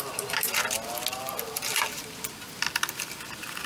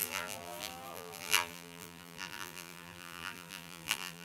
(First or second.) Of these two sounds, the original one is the first